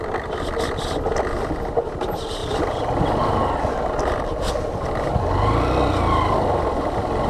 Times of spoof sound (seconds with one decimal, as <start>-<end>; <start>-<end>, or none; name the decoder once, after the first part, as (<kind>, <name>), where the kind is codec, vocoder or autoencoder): none